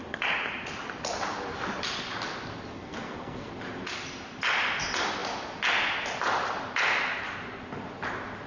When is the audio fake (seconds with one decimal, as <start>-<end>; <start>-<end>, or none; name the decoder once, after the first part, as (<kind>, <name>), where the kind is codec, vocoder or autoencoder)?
2.7-3.5 (codec, SNAC)